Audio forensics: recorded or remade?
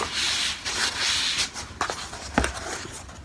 recorded